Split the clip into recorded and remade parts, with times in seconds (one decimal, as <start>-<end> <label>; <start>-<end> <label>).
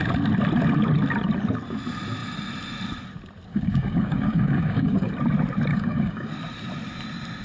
0.0-3.5 recorded; 3.5-5.1 remade; 5.1-5.7 recorded; 5.7-6.3 remade; 6.3-7.4 recorded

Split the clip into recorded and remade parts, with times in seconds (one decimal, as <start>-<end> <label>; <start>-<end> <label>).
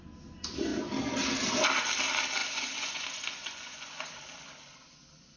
0.0-2.4 recorded; 2.4-4.1 remade; 4.1-5.4 recorded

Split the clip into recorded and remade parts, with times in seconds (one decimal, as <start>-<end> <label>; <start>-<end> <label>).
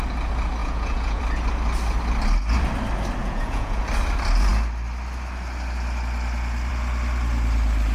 0.0-0.6 recorded; 0.6-1.2 remade; 1.2-3.2 recorded; 3.2-3.8 remade; 3.8-7.9 recorded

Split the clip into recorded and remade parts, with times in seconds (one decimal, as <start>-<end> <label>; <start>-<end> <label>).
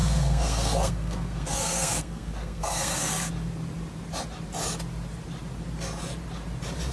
0.0-3.3 remade; 3.3-6.9 recorded